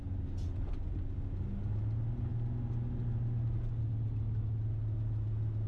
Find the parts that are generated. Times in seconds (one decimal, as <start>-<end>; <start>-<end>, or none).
none